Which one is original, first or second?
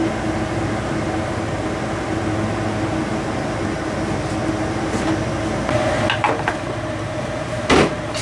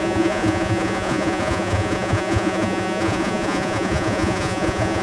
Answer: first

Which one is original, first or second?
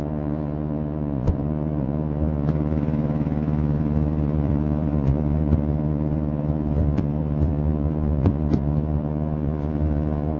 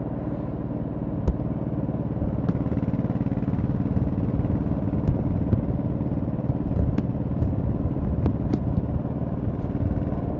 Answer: second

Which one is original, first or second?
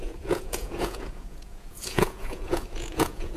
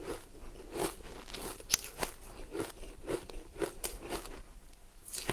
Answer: second